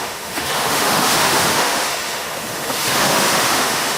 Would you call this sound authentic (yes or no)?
no